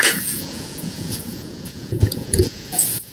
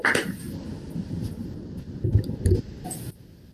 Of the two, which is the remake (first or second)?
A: first